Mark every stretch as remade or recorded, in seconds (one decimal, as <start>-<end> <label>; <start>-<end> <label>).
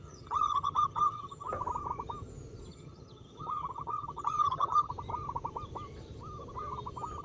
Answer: 0.0-1.5 remade; 1.5-2.7 recorded; 2.7-4.9 remade; 4.9-7.2 recorded